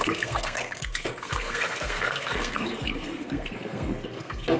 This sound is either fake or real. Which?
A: fake